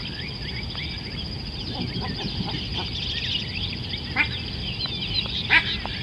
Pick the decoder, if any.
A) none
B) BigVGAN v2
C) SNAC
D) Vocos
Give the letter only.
A